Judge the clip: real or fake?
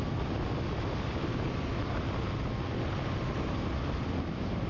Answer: real